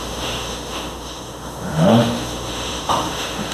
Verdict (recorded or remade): remade